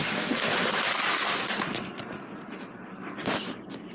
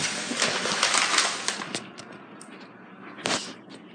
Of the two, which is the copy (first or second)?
first